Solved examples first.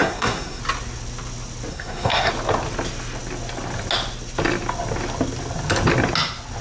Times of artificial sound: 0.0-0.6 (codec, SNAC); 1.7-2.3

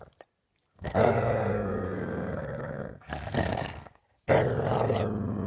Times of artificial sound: 0.7-4.0 (codec, SNAC)

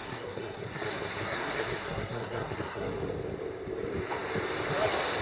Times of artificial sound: 0.0-2.9 (codec, SNAC)

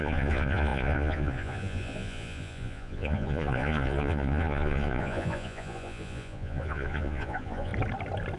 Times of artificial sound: 0.0-7.7 (vocoder, Vocos)

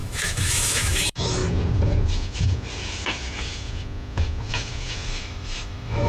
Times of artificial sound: 0.0-1.4 (autoencoder, DAC-VAE); 5.1-6.1

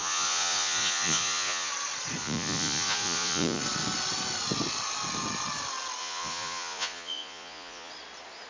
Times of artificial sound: 0.0-1.7 (vocoder, Vocos); 2.2-3.6; 6.0-7.9